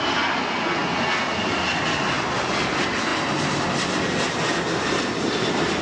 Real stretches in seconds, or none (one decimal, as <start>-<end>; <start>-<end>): 0.0-5.8